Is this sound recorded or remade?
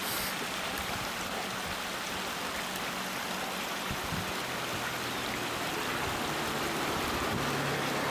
recorded